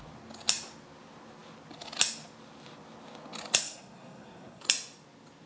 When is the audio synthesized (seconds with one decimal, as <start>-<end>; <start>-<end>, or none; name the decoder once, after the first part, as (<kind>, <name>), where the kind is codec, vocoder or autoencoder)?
3.6-4.6 (codec, SNAC)